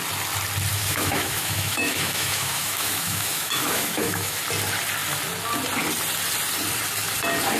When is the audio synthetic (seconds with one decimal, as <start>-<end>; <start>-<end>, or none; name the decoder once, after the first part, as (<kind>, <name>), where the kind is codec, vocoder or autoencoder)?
0.7-4.4 (autoencoder, DAC-VAE)